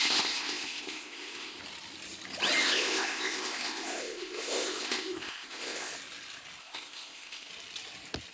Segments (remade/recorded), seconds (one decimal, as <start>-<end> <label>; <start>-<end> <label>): 0.0-1.6 remade; 1.6-2.6 recorded; 2.6-5.9 remade; 5.9-6.6 recorded; 6.6-7.5 remade; 7.5-8.3 recorded